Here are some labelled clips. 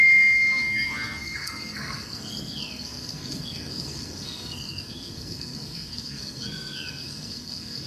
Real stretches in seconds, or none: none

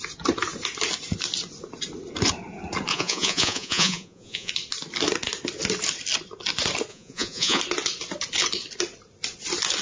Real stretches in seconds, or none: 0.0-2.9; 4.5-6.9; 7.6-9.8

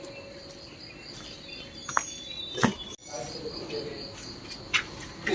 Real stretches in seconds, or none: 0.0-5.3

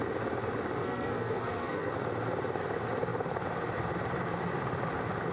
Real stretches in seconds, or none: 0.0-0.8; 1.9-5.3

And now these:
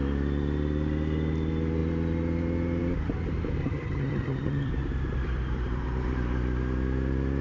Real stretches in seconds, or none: 0.0-3.6; 4.7-7.4